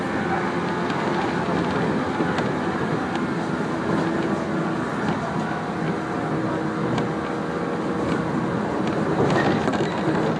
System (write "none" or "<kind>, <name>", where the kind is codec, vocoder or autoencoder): none